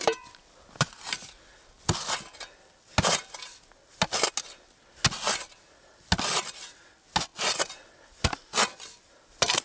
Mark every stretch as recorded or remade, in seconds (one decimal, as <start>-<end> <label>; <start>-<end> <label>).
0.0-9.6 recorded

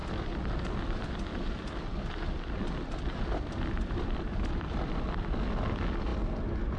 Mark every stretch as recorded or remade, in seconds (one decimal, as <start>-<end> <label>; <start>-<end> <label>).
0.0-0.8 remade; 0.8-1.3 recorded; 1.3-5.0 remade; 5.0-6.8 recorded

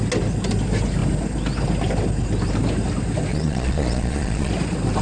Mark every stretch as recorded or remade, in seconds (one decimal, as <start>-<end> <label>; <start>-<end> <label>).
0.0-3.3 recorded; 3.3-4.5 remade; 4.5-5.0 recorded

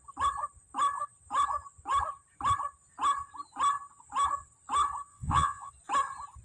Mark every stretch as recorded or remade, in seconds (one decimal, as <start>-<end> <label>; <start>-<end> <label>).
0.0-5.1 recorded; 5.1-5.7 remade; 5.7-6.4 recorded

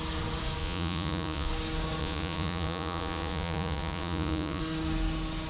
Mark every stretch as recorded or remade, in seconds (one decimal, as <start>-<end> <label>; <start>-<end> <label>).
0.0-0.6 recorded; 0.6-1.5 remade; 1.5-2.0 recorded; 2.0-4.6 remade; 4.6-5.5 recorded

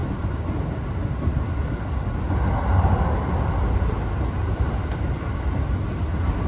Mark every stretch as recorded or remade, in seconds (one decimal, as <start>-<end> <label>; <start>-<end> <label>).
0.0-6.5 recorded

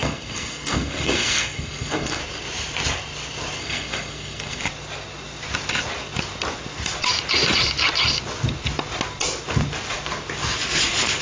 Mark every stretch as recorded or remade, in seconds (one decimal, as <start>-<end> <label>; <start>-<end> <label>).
0.0-2.2 remade; 2.2-3.6 recorded; 3.6-4.6 remade; 4.6-11.2 recorded